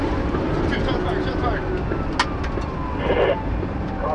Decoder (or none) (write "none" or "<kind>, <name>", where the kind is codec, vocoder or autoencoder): none